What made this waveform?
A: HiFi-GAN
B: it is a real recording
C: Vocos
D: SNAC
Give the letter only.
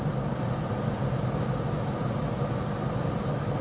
B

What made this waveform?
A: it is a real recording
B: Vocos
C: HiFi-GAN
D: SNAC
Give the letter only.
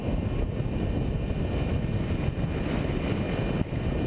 A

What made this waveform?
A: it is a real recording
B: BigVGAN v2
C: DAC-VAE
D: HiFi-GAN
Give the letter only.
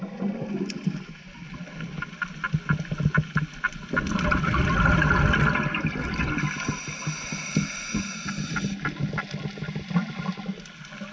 A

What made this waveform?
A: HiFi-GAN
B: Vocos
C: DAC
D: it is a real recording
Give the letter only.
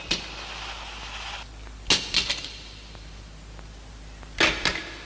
D